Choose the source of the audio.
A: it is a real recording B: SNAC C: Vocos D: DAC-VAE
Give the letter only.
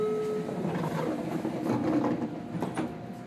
A